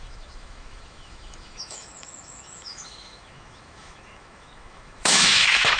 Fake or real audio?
fake